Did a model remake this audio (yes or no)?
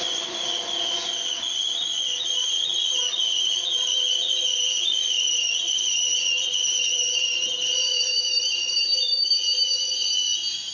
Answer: yes